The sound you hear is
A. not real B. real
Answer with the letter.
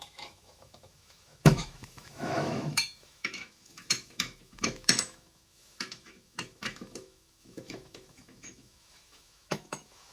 A